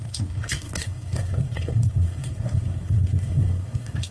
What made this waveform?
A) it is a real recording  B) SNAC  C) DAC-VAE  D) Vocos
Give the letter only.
B